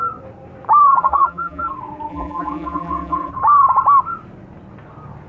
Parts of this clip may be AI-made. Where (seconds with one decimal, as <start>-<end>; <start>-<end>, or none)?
0.9-1.7; 2.1-3.3